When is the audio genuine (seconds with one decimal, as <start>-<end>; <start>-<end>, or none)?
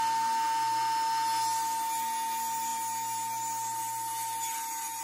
0.0-5.0